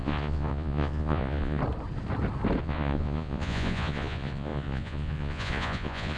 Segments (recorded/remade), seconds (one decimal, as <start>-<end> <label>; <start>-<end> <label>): 0.0-1.6 remade; 1.6-2.6 recorded; 2.6-6.2 remade